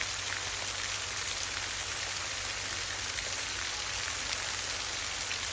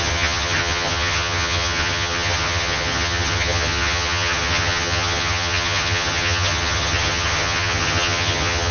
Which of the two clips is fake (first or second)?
second